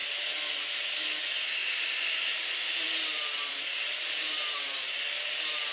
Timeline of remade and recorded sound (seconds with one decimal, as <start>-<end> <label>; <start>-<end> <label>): 0.0-1.6 recorded; 1.6-5.0 remade; 5.0-5.7 recorded